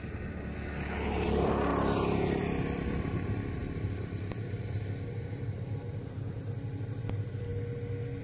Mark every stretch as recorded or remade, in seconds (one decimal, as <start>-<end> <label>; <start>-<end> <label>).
0.0-1.7 remade; 1.7-2.4 recorded; 2.4-7.5 remade; 7.5-8.2 recorded